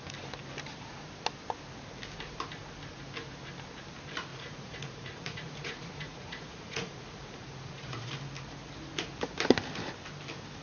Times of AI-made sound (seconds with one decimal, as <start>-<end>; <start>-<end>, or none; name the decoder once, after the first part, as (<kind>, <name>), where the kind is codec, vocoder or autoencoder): 4.3-8.1 (vocoder, Vocos)